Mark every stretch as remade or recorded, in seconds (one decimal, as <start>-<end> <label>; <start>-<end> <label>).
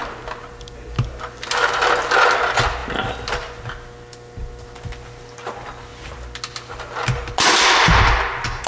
0.0-8.7 recorded